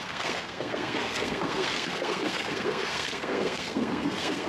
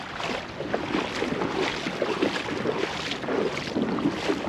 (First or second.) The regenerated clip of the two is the first